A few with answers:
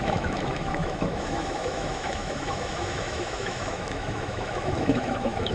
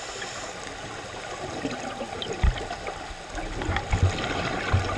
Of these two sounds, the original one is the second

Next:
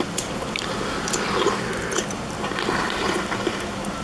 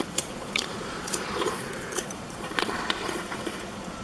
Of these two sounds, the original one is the first